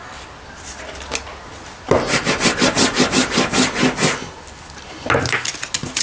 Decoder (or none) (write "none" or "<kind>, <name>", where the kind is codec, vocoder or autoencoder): none